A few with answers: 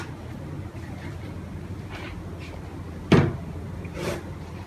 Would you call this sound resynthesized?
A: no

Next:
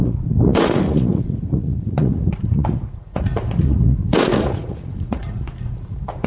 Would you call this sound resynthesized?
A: yes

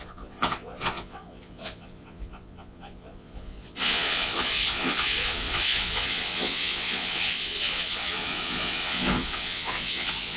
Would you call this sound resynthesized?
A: yes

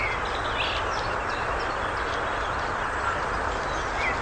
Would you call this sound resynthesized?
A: no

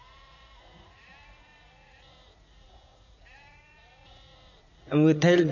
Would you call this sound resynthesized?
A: yes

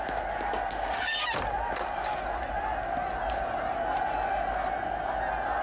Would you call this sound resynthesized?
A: no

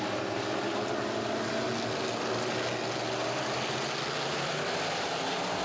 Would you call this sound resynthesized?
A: no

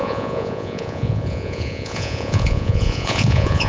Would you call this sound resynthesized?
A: yes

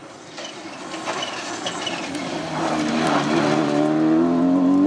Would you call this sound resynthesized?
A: no